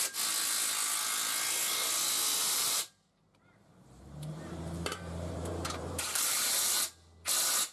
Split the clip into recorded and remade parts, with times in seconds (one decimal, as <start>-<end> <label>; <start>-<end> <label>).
0.0-2.3 recorded; 2.3-6.9 remade; 6.9-7.7 recorded